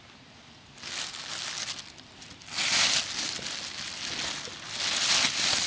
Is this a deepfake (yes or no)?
no